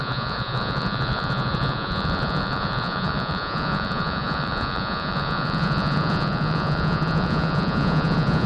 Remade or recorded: remade